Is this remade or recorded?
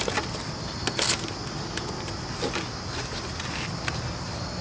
recorded